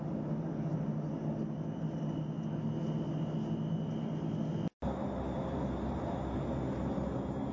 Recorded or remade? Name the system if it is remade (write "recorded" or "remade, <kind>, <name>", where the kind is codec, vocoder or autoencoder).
recorded